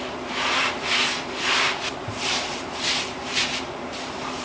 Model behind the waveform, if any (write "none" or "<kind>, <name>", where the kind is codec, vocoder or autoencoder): vocoder, BigVGAN v2